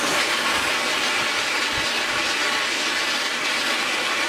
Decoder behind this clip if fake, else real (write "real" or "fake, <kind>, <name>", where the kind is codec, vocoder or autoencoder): real